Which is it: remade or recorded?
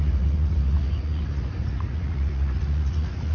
remade